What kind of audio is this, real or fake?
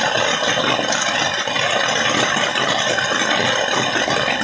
real